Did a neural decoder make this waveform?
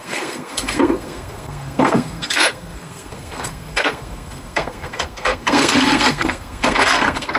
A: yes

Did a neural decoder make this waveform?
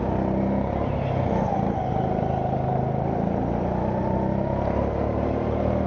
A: no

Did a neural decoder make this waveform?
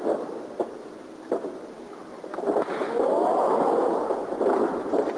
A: yes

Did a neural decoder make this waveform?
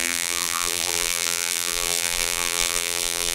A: yes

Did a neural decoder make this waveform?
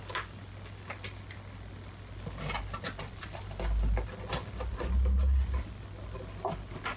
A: no